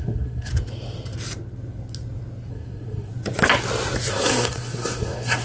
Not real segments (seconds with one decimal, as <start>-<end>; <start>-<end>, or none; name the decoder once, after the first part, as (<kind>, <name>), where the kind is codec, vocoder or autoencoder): 0.0-0.5 (codec, SNAC); 2.5-3.1; 4.1-5.4

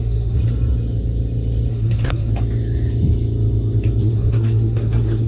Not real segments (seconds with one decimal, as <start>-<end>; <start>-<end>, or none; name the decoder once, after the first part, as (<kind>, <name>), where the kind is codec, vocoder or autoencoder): 0.0-0.4 (codec, SNAC); 1.7-2.3; 4.0-5.3

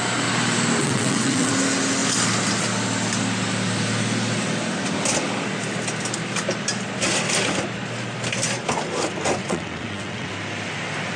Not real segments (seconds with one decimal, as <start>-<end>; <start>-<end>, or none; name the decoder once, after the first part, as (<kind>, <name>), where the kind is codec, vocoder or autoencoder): 0.8-1.5 (vocoder, WaveNeXt); 9.4-10.3

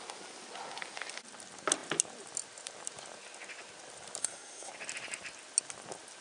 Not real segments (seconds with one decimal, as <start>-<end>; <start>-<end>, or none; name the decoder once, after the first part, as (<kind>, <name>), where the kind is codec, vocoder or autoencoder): 4.2-4.7 (codec, SNAC)

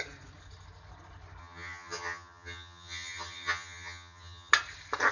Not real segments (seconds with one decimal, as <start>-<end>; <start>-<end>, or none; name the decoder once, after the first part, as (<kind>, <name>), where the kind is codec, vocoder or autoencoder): 1.4-4.5 (vocoder, HiFi-GAN)

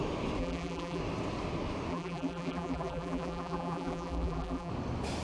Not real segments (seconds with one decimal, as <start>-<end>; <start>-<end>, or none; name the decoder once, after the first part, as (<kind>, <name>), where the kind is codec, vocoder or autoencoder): 0.4-1.0 (vocoder, BigVGAN v2); 1.9-4.7

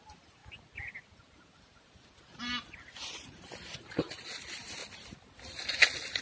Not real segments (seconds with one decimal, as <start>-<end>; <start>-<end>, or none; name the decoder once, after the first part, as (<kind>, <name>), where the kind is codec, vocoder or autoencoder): none

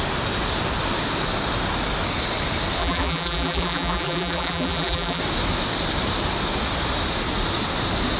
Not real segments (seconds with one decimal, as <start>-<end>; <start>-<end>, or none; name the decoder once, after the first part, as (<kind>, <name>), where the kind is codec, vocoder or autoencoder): 2.8-5.2 (vocoder, BigVGAN v2)